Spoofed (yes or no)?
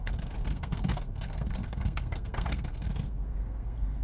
yes